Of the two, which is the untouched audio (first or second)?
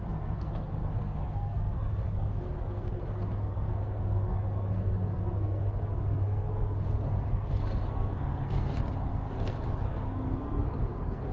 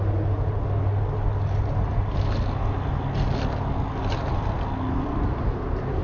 second